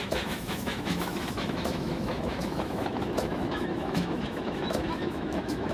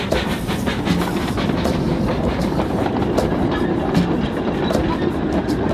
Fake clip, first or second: first